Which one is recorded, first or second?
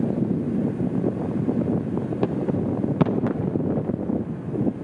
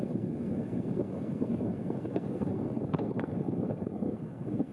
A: first